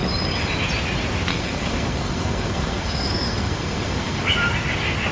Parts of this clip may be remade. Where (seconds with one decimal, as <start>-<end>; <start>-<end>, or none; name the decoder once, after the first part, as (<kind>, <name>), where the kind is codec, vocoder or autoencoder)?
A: 1.3-4.3 (codec, SNAC)